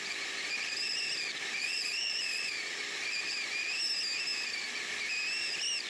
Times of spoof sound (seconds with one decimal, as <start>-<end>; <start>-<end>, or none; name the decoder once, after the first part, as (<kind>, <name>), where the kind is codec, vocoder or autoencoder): 1.6-2.8 (vocoder, Vocos)